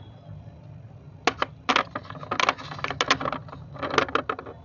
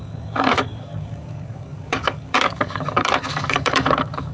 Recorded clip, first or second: first